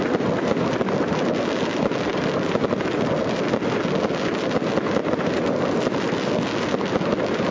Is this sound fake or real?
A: real